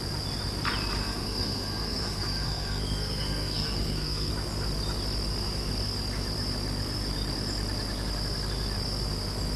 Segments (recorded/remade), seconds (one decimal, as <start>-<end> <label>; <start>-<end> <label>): 0.0-1.0 recorded; 1.0-4.3 remade; 4.3-9.6 recorded